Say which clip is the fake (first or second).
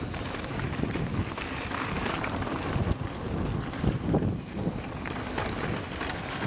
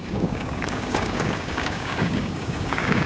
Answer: second